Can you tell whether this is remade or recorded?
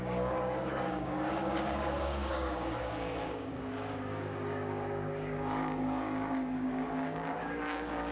remade